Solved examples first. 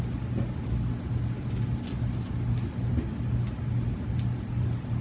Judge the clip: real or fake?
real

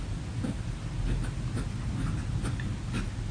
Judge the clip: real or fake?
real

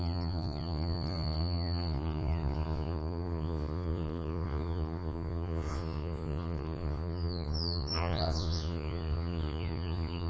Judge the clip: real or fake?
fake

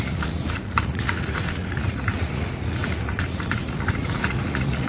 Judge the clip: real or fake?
fake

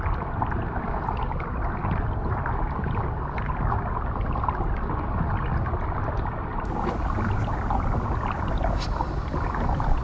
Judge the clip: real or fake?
real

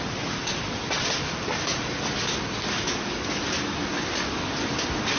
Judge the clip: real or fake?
real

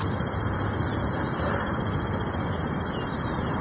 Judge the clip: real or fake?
real